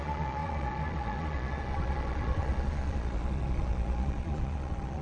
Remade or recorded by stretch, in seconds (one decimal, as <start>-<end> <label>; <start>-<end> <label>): 0.0-5.0 remade